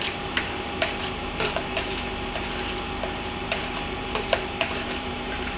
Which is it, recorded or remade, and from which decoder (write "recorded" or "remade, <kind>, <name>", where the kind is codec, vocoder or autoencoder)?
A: remade, vocoder, BigVGAN v2